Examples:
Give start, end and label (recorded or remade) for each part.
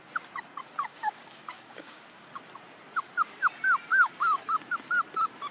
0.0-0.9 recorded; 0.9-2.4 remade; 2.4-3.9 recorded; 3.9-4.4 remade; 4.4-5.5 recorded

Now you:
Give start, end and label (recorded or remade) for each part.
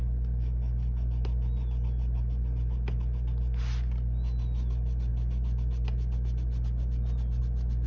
0.0-7.9 recorded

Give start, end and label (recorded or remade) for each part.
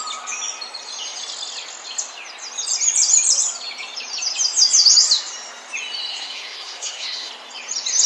0.0-6.1 recorded; 6.1-7.3 remade; 7.3-8.1 recorded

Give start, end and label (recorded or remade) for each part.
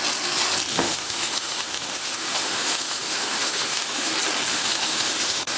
0.0-0.7 recorded; 0.7-4.1 remade; 4.1-4.5 recorded; 4.5-5.6 remade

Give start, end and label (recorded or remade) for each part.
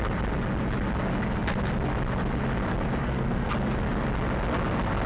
0.0-3.0 recorded; 3.0-3.5 remade; 3.5-5.1 recorded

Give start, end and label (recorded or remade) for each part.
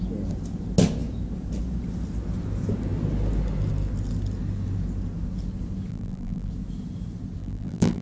0.0-5.9 recorded; 5.9-6.5 remade; 6.5-7.4 recorded; 7.4-8.0 remade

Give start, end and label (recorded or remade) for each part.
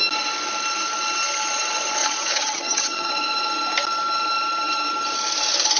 0.0-2.0 recorded; 2.0-3.1 remade; 3.1-5.8 recorded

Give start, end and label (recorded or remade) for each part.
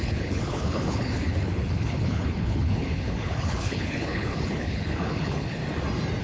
0.0-5.6 remade; 5.6-6.2 recorded